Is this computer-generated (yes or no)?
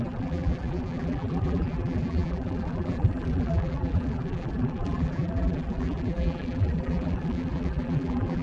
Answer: yes